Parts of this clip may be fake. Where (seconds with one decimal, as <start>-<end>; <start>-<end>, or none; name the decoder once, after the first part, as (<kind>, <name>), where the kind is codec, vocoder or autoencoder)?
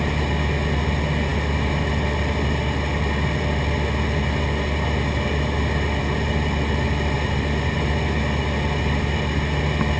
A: none